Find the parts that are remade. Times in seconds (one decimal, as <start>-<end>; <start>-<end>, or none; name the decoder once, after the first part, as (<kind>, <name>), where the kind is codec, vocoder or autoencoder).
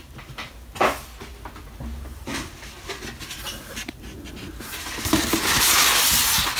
none